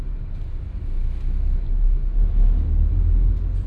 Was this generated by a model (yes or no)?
no